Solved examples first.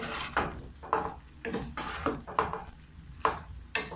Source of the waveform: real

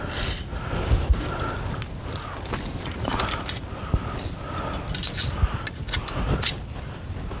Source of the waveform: real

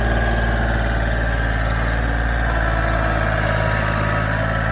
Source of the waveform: real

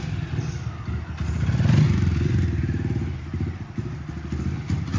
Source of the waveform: real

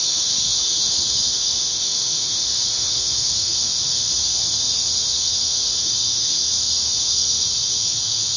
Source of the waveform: fake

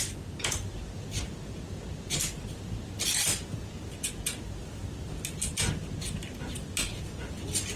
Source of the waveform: real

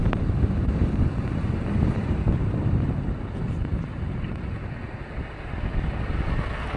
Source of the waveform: real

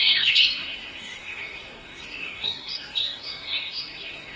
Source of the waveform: fake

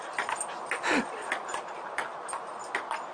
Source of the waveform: real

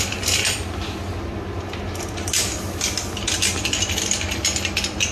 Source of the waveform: real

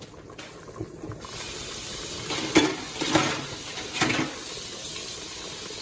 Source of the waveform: real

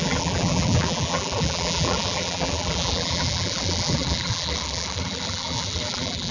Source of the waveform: fake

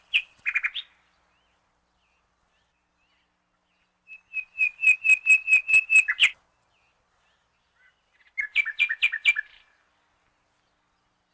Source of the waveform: real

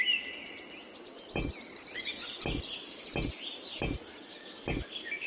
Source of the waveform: real